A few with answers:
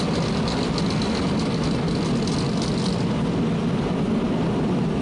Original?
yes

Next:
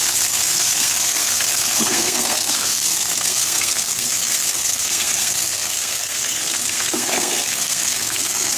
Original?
no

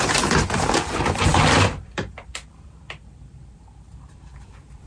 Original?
no